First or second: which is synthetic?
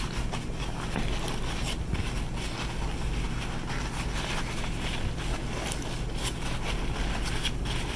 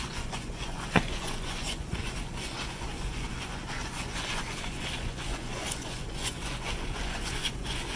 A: second